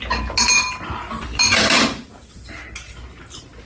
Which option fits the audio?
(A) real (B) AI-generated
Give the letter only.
A